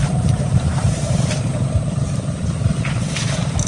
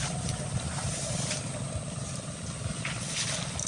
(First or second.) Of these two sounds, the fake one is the first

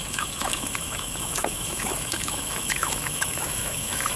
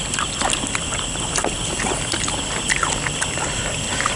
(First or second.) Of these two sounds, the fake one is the first